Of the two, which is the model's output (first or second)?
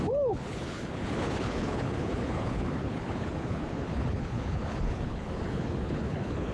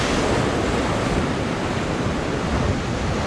first